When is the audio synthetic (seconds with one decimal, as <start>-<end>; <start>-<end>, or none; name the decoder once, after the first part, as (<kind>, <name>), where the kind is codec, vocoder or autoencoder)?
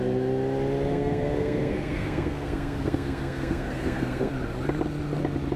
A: 0.9-4.3 (codec, SNAC)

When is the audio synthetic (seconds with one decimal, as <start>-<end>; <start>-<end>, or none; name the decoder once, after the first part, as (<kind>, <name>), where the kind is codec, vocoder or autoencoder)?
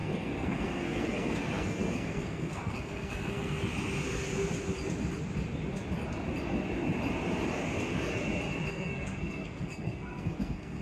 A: 0.0-3.7 (codec, SNAC); 8.7-10.8